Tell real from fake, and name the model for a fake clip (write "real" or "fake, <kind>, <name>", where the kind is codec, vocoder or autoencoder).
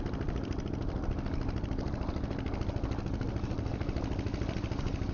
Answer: real